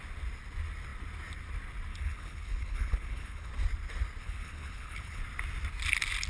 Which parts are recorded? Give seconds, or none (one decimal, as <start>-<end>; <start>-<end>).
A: 0.0-1.9; 3.5-4.2; 5.2-6.3